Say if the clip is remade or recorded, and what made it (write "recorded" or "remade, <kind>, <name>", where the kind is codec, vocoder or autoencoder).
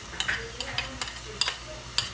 recorded